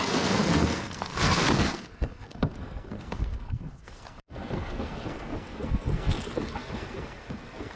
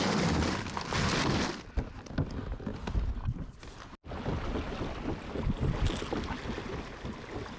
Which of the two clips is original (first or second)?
second